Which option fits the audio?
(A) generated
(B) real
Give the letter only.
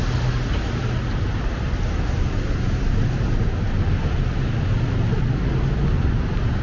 B